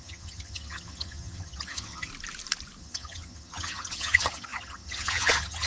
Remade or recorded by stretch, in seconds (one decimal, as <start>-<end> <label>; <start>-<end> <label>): 0.0-2.1 remade; 2.1-2.8 recorded; 2.8-5.7 remade